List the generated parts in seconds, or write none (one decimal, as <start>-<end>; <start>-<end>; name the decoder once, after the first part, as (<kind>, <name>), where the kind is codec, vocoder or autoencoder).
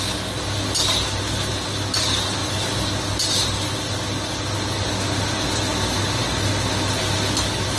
none